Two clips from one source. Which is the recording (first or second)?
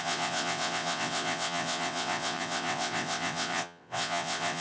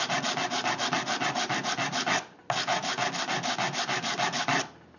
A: second